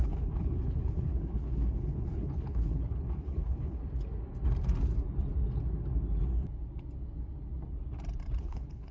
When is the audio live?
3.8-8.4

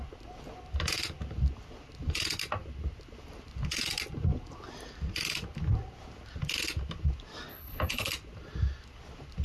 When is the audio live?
0.0-7.5; 8.1-9.4